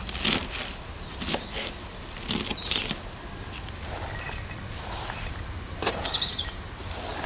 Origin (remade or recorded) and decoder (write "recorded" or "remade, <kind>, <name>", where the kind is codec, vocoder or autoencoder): recorded